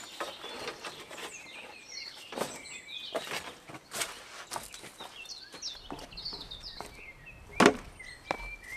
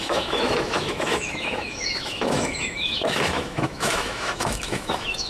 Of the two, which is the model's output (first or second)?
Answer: second